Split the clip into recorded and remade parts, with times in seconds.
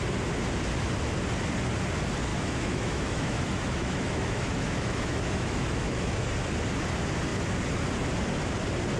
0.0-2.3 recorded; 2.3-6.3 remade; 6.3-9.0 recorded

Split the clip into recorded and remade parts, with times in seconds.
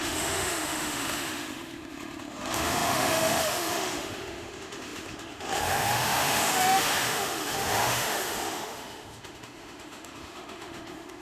0.0-11.2 remade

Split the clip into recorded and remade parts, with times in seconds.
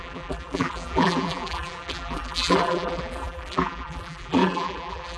0.0-5.2 remade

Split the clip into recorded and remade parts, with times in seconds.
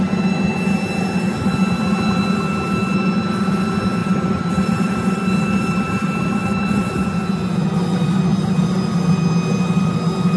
0.0-4.0 recorded; 4.0-5.9 remade; 5.9-6.4 recorded; 6.4-7.0 remade; 7.0-10.4 recorded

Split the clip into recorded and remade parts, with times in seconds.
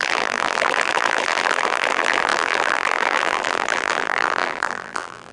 0.0-5.3 remade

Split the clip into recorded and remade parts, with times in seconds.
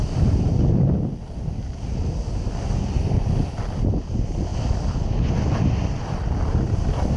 0.0-0.5 remade; 0.5-7.2 recorded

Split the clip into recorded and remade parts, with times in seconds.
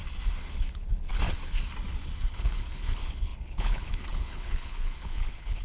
0.0-0.7 recorded; 0.7-1.1 remade; 1.1-2.3 recorded; 2.3-5.6 remade